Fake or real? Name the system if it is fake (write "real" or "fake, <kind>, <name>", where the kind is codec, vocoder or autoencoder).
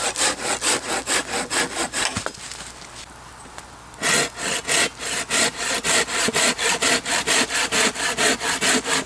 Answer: real